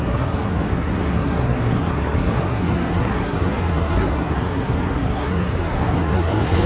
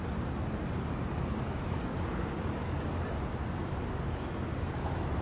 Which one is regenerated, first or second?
first